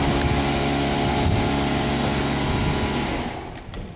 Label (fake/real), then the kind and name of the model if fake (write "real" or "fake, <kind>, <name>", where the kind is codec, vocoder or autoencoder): real